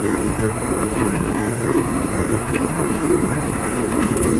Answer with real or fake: fake